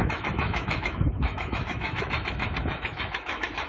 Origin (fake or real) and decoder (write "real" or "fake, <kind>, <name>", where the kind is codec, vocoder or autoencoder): fake, autoencoder, DAC-VAE